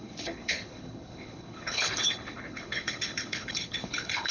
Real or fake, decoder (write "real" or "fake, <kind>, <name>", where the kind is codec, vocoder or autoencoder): fake, codec, HILCodec